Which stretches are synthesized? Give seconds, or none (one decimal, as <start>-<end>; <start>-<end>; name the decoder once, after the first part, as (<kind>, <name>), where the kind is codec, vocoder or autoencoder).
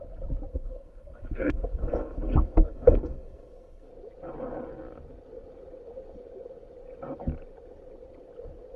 0.5-3.9 (codec, SNAC)